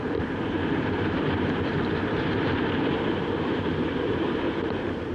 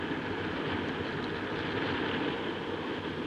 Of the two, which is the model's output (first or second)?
first